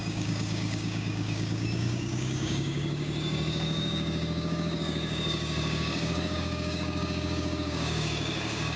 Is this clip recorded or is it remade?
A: remade